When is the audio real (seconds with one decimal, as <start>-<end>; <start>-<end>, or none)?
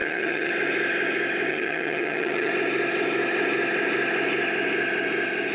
0.5-1.5; 2.5-5.5